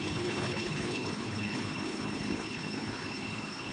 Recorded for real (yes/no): no